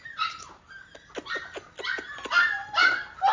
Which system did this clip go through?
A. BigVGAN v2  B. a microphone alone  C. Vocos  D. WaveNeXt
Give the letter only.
B